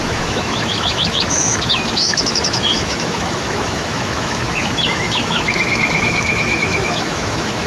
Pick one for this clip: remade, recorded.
remade